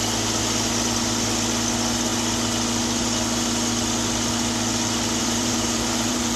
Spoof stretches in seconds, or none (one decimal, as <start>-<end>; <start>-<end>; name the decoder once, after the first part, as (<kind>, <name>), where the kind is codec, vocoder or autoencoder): 5.2-6.4 (vocoder, BigVGAN v2)